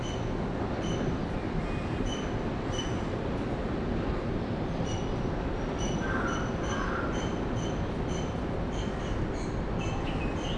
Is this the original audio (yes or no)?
yes